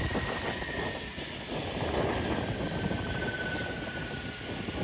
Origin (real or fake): real